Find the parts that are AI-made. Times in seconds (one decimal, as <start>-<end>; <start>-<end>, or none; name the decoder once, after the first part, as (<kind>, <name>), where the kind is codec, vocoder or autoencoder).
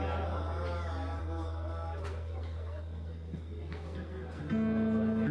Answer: 1.2-4.4 (codec, SNAC)